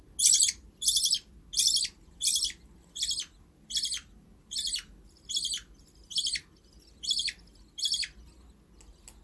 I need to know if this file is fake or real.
real